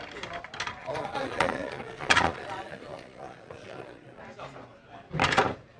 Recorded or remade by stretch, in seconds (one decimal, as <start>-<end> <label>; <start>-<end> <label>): 0.0-0.8 recorded; 0.8-4.2 remade; 4.2-5.8 recorded